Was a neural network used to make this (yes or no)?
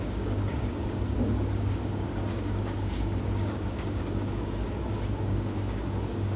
yes